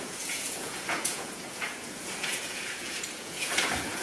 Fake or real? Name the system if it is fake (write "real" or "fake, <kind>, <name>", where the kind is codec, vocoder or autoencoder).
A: fake, vocoder, Vocos